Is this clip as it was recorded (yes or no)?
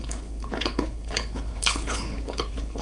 no